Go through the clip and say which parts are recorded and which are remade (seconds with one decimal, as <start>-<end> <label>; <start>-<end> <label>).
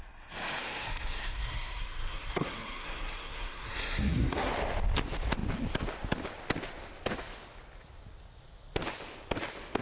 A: 0.0-0.6 recorded; 0.6-4.5 remade; 4.5-9.8 recorded